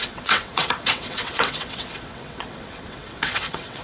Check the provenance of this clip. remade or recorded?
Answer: remade